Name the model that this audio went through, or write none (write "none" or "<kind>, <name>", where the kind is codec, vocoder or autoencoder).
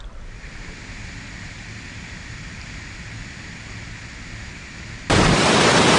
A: none